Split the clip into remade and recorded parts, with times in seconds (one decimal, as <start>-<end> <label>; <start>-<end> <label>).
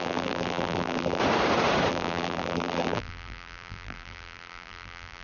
0.0-1.2 remade; 1.2-1.9 recorded; 1.9-5.2 remade